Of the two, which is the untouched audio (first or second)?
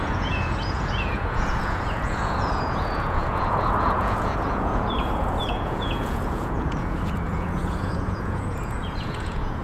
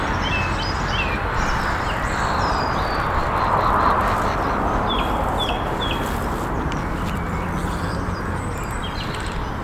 second